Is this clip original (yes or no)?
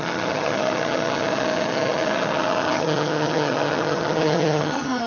no